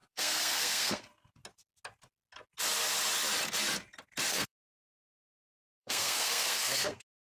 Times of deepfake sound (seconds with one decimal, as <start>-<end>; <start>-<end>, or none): 0.0-1.1; 4.3-7.3